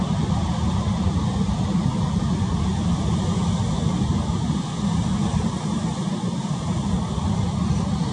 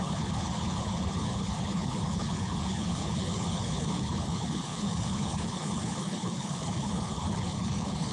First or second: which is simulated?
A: second